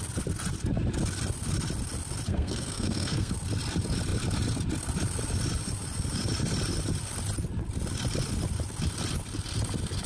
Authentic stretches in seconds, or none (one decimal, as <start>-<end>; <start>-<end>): 0.0-2.3; 3.3-10.1